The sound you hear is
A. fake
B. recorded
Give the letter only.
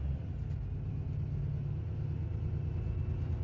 B